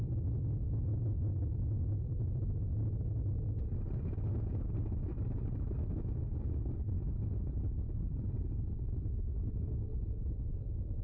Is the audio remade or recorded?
recorded